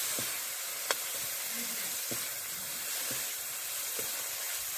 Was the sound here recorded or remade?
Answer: recorded